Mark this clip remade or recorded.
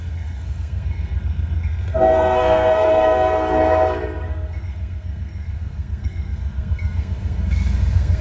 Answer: remade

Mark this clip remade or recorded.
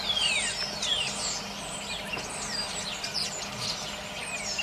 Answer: recorded